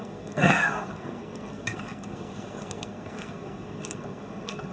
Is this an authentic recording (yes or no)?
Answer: no